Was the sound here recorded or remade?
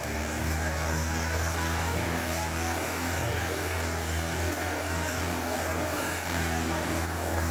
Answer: remade